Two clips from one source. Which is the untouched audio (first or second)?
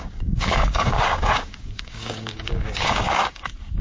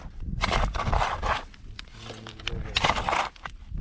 second